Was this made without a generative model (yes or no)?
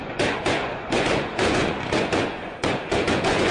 no